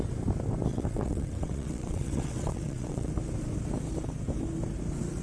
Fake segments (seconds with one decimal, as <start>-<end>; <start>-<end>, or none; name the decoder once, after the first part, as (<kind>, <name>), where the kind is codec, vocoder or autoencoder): 0.7-3.1 (vocoder, WaveNeXt)